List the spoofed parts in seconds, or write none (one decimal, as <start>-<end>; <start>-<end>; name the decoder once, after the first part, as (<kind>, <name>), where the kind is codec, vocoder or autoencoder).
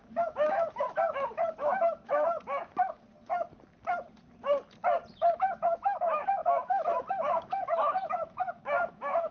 0.0-2.6 (autoencoder, DAC-VAE); 5.1-9.3